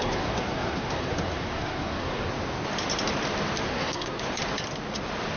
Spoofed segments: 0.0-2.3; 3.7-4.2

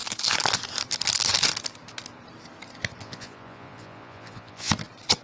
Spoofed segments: 3.0-4.7

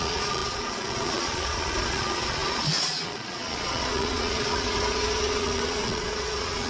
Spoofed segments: 0.0-6.7

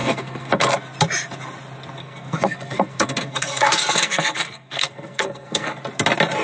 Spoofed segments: 0.0-0.7; 2.0-5.8

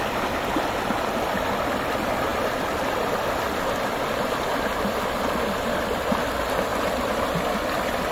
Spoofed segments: none

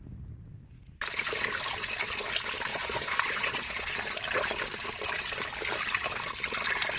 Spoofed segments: 2.7-3.9